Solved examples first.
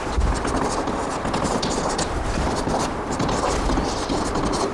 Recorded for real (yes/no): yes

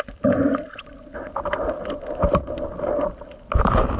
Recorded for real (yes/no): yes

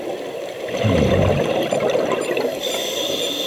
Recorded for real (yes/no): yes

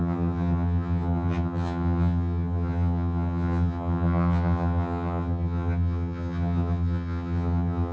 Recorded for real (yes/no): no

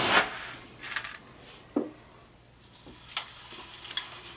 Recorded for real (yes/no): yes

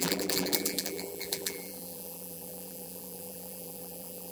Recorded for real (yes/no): no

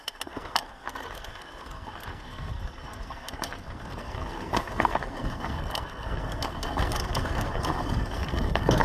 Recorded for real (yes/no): no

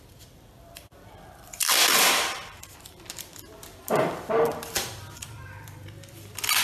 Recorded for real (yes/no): no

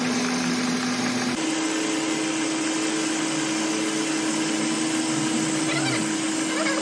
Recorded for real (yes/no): yes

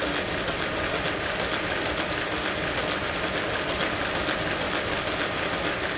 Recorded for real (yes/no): yes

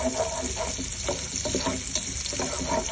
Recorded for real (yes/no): yes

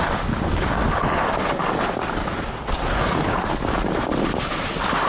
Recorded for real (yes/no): yes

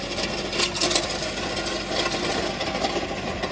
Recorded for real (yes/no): yes